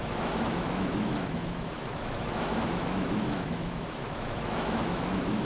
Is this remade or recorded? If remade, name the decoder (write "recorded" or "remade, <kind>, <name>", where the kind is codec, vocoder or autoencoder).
remade, autoencoder, DAC-VAE